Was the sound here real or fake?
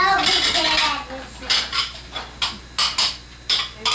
real